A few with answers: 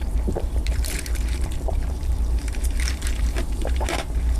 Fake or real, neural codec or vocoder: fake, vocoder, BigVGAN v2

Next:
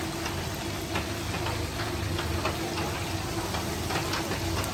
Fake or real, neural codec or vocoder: real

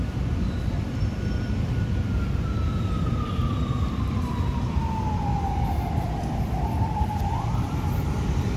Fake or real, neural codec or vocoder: fake, vocoder, BigVGAN v2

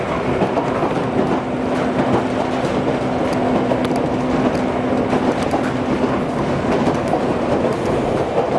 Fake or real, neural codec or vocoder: real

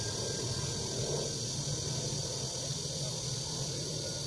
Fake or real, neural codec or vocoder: real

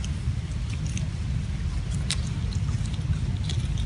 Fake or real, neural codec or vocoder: real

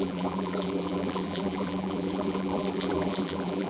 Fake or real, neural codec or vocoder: fake, vocoder, BigVGAN v2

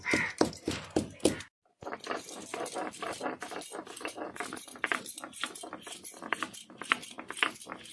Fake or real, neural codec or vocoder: real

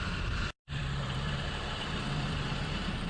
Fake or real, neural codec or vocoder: fake, vocoder, BigVGAN v2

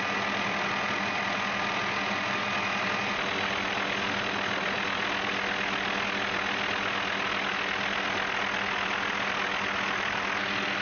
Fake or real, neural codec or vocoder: real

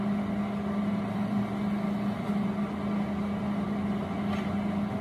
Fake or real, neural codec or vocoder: real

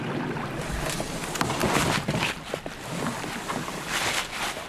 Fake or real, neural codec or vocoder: real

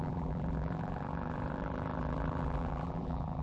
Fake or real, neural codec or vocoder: fake, vocoder, BigVGAN v2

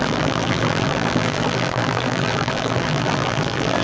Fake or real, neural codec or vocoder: fake, vocoder, BigVGAN v2